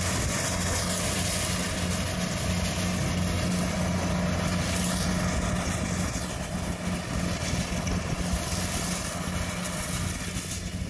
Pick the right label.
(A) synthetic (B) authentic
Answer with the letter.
B